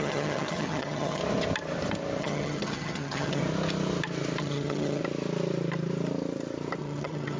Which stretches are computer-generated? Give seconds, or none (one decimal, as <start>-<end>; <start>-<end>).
0.0-1.2; 2.2-3.4; 4.4-5.0; 6.8-7.4